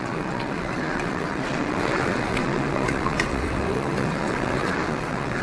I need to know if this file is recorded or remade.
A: remade